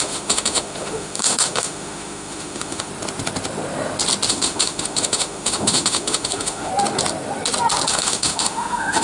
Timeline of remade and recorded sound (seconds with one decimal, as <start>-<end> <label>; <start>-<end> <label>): 0.0-2.9 remade; 2.9-4.3 recorded; 4.3-6.7 remade; 6.7-7.9 recorded; 7.9-9.0 remade